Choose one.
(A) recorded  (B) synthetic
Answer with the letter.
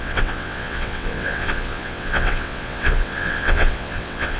B